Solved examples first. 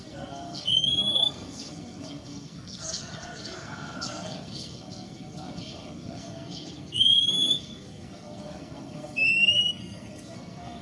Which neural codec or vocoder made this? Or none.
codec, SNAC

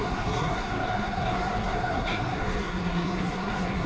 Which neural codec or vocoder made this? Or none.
codec, SNAC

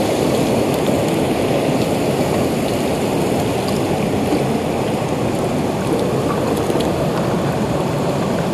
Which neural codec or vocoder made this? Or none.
none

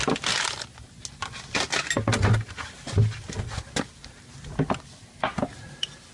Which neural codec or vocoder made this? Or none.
none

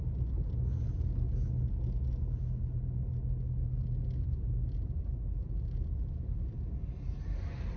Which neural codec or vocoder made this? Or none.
none